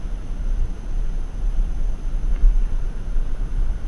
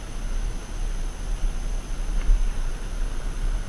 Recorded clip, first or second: second